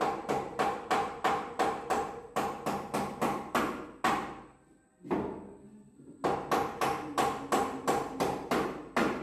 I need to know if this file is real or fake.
real